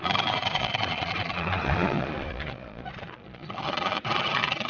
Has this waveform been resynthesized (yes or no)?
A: yes